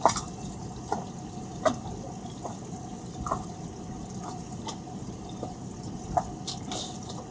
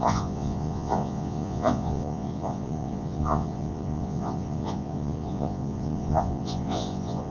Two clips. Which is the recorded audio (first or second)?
first